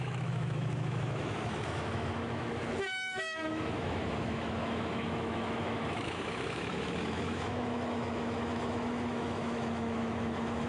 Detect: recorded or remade remade